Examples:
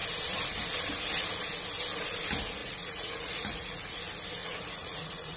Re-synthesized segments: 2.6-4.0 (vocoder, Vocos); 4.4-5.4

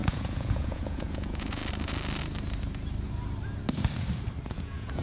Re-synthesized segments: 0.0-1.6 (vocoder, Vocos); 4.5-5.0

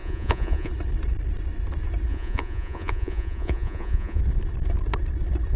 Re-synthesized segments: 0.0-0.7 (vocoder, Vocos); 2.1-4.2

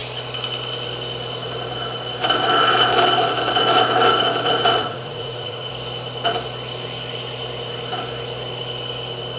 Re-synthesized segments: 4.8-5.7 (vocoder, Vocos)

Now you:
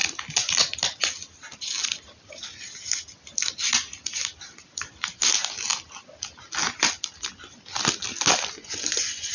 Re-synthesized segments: 8.6-9.3 (vocoder, Vocos)

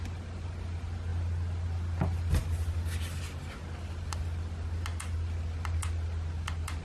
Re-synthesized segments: none